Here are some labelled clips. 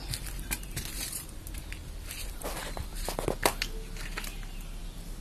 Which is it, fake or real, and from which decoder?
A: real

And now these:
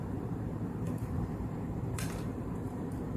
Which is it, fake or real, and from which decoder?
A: fake, vocoder, BigVGAN v2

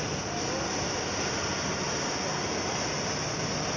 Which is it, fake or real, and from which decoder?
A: real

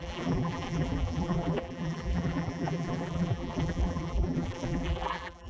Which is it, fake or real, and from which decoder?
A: fake, vocoder, BigVGAN v2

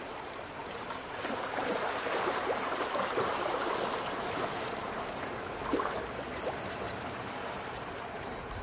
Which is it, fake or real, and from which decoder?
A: fake, vocoder, BigVGAN v2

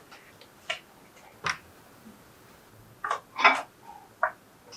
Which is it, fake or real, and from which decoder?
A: real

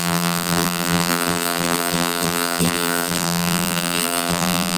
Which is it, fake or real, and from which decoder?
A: fake, vocoder, BigVGAN v2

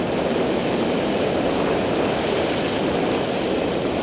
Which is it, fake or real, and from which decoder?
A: fake, vocoder, BigVGAN v2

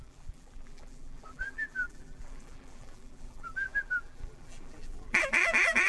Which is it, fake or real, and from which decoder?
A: fake, vocoder, BigVGAN v2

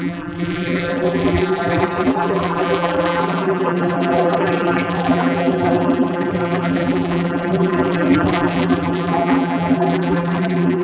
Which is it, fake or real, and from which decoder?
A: fake, vocoder, BigVGAN v2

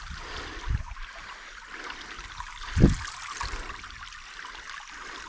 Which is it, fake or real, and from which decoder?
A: real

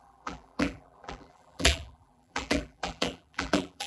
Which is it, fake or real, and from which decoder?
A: fake, vocoder, BigVGAN v2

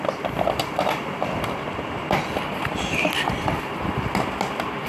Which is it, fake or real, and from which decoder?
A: real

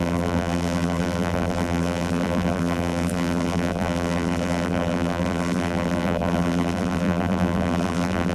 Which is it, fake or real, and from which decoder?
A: fake, vocoder, BigVGAN v2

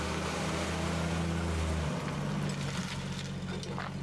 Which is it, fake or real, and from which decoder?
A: real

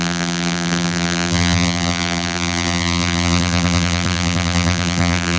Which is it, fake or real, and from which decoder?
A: fake, vocoder, BigVGAN v2